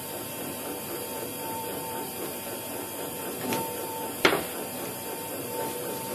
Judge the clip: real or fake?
fake